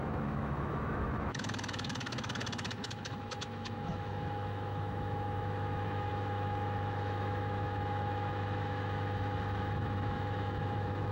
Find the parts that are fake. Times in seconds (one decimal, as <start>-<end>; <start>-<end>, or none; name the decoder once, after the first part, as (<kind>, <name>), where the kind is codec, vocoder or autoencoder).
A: 0.0-11.1 (autoencoder, DAC-VAE)